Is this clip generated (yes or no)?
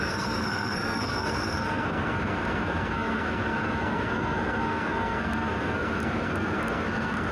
yes